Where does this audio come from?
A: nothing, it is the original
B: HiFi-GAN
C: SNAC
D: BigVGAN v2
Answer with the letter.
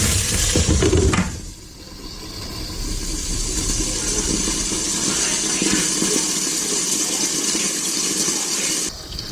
A